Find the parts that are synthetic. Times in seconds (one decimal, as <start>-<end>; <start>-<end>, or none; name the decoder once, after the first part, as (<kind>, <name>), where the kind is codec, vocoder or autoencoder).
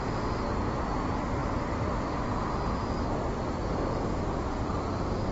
none